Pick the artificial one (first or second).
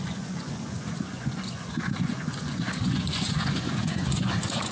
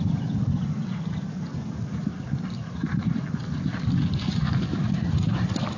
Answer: first